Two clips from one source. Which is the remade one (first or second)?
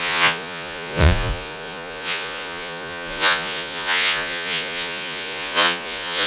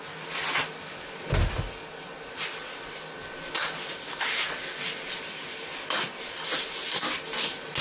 first